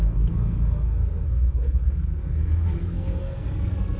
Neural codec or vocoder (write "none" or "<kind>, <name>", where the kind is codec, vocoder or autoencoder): codec, SNAC